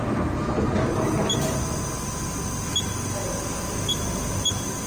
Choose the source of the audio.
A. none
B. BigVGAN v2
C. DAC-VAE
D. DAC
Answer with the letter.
A